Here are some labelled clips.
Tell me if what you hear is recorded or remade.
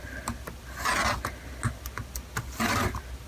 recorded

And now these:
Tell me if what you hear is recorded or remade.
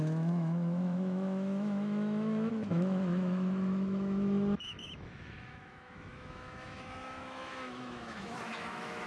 remade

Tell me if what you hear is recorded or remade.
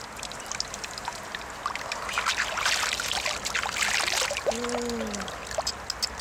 recorded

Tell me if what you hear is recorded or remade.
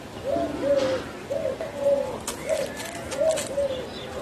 recorded